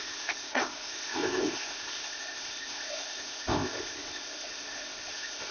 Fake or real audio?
fake